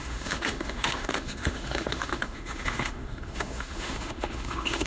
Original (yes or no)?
no